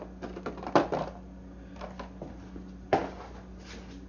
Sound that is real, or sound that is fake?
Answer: real